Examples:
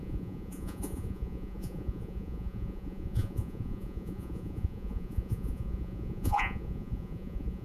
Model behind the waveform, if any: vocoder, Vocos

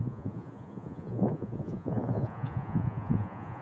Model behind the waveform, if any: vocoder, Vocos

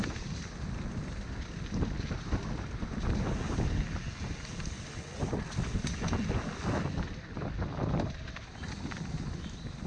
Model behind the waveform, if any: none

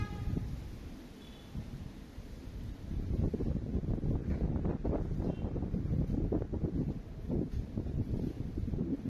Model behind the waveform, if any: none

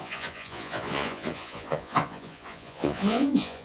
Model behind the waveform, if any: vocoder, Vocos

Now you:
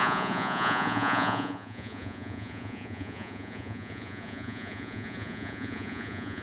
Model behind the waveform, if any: vocoder, Vocos